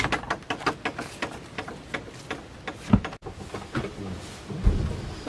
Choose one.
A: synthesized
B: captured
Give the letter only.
B